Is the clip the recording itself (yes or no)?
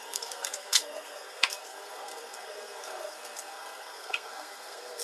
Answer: no